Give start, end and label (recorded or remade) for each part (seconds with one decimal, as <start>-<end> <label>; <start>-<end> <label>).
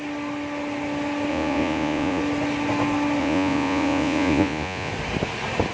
0.0-1.3 recorded; 1.3-2.2 remade; 2.2-3.2 recorded; 3.2-4.9 remade; 4.9-5.7 recorded